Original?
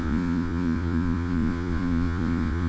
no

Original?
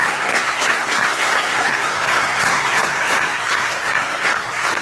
no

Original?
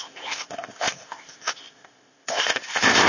no